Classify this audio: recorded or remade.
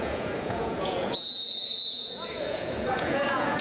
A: remade